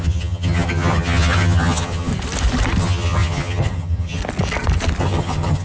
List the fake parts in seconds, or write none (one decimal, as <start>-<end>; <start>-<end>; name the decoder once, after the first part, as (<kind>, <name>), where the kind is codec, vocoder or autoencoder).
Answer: 0.0-2.1 (vocoder, HiFi-GAN); 2.8-4.2; 5.0-5.6